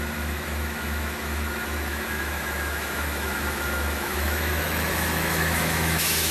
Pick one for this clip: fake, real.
fake